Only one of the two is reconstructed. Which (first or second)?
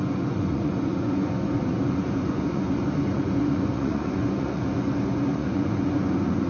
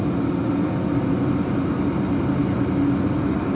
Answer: first